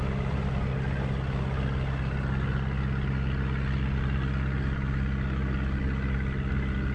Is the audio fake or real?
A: real